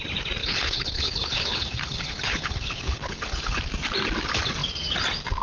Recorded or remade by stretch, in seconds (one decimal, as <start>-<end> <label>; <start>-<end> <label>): 0.0-0.4 recorded; 0.4-3.6 remade; 3.6-5.4 recorded